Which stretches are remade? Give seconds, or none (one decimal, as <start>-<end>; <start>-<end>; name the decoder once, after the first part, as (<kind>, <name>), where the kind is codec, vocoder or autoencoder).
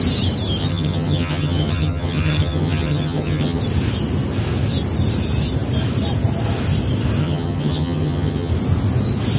0.6-3.6 (vocoder, HiFi-GAN); 7.2-8.5